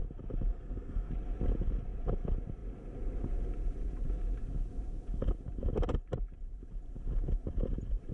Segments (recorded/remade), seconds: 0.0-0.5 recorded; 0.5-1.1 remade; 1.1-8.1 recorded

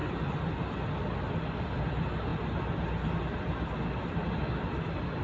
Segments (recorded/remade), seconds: 0.0-5.2 recorded

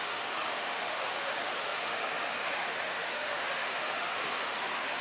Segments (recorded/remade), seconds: 0.0-5.0 remade

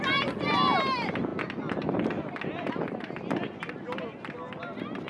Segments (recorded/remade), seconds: 0.0-5.1 recorded

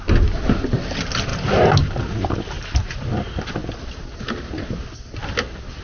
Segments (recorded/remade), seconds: 0.0-5.8 recorded

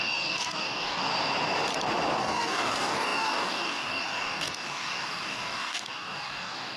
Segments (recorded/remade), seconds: 0.0-1.1 remade; 1.1-2.2 recorded; 2.2-6.8 remade

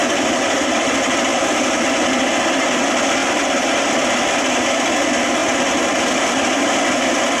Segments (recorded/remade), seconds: 0.0-0.6 remade; 0.6-1.3 recorded; 1.3-2.7 remade; 2.7-7.4 recorded

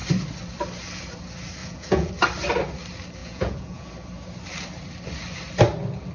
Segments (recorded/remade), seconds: 0.0-1.6 recorded; 1.6-2.1 remade; 2.1-3.2 recorded; 3.2-3.9 remade; 3.9-6.1 recorded